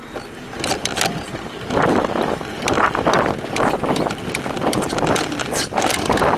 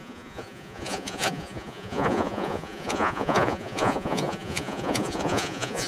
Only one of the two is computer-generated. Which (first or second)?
second